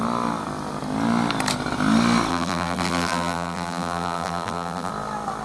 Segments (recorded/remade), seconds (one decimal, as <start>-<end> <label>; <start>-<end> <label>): 0.0-2.3 recorded; 2.3-4.9 remade; 4.9-5.4 recorded

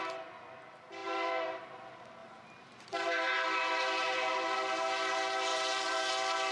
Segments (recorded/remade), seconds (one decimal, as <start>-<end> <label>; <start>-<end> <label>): 0.0-1.0 recorded; 1.0-1.8 remade; 1.8-2.2 recorded; 2.2-4.8 remade; 4.8-5.5 recorded; 5.5-6.1 remade; 6.1-6.5 recorded

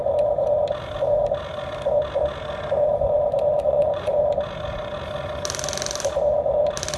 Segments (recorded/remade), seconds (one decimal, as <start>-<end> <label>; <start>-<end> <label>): 0.0-3.6 recorded; 3.6-4.1 remade; 4.1-7.0 recorded

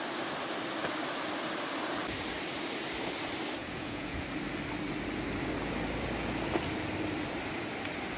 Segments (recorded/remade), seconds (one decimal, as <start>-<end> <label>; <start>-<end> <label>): 0.0-3.6 recorded; 3.6-4.2 remade; 4.2-8.2 recorded

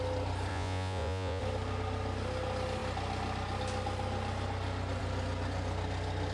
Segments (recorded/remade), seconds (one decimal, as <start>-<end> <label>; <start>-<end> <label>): 0.0-0.5 recorded; 0.5-1.4 remade; 1.4-6.3 recorded

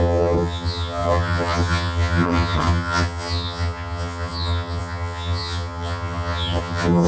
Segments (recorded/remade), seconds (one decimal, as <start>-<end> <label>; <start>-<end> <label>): 0.0-7.1 remade